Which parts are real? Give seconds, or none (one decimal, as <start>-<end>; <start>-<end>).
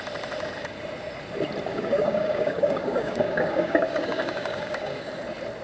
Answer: 0.0-1.7; 5.1-5.6